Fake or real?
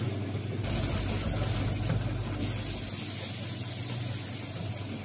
real